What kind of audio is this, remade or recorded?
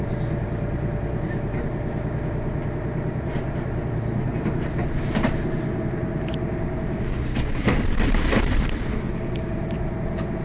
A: remade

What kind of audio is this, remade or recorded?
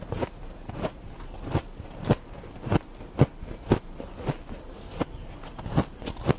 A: recorded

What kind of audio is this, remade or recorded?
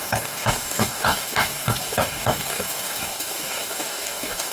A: remade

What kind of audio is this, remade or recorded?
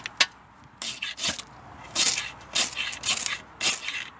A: recorded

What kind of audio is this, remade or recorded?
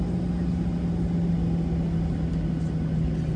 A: recorded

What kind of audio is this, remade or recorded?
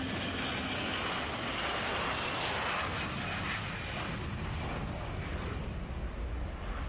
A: recorded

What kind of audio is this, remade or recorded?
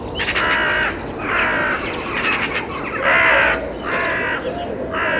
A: recorded